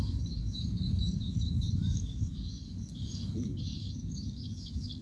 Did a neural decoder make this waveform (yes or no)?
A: yes